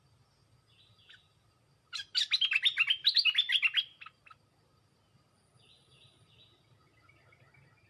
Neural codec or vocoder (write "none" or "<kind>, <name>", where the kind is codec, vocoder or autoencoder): none